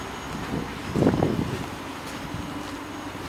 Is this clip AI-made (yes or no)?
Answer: no